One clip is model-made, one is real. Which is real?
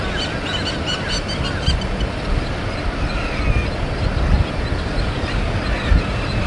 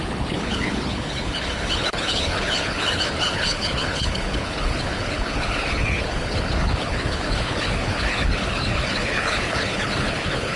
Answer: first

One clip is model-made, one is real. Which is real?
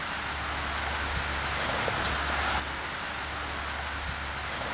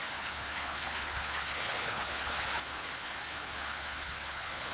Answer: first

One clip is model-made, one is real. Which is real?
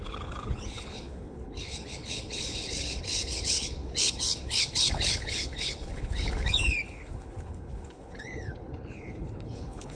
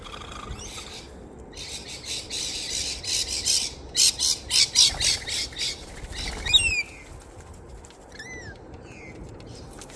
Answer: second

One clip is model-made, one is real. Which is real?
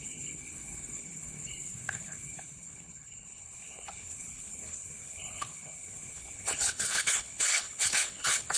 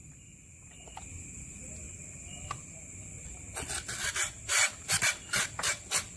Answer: second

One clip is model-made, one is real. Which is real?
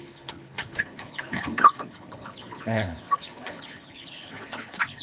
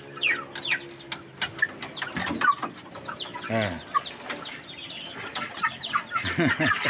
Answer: second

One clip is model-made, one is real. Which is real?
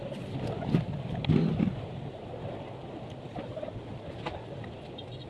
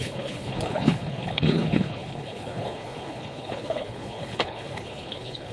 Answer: first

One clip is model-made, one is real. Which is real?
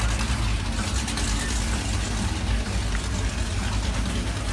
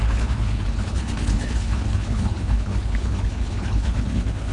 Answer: first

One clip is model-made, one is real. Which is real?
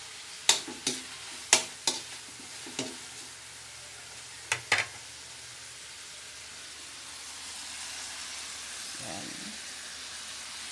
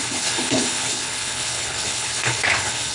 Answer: first